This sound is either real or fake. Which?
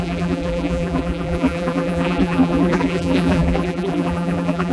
fake